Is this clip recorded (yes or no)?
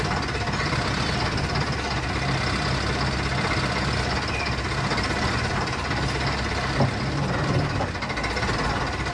yes